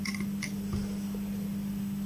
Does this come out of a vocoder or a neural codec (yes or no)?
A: no